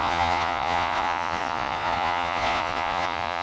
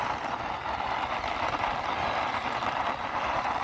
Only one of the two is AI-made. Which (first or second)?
first